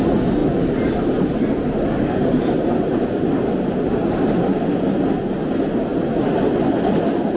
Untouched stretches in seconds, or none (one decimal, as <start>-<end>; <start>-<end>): 0.0-7.4